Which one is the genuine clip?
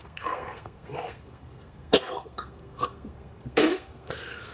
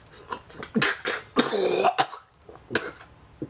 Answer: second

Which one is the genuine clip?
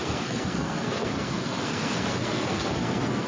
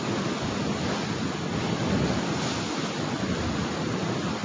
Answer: second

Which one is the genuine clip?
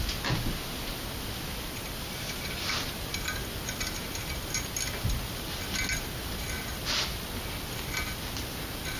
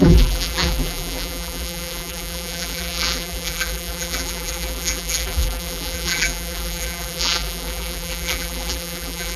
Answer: first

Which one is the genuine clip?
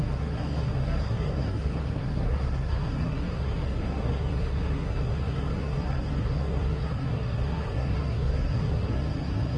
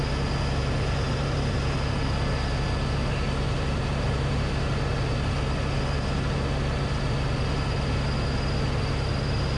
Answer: second